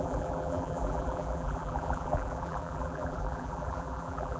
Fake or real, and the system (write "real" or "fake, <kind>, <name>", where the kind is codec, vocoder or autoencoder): fake, vocoder, BigVGAN v2